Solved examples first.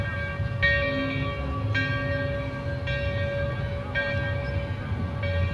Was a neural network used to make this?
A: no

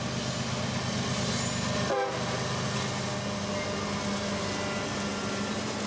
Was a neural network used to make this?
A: no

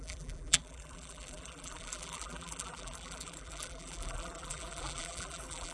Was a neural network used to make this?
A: yes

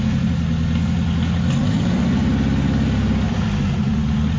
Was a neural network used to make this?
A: no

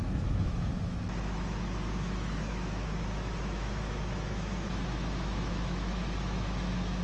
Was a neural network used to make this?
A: yes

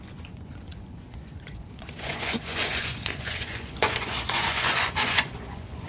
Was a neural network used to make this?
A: yes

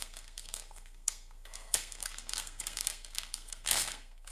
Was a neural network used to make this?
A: yes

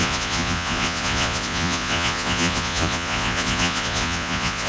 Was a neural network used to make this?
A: yes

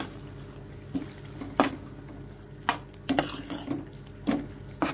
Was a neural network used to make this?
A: no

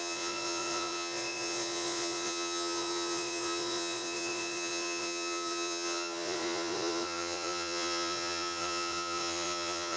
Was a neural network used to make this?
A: yes